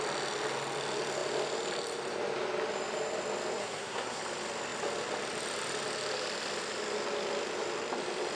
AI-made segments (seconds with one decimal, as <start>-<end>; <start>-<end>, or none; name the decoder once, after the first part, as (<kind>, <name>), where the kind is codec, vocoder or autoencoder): 3.6-4.2 (codec, SNAC)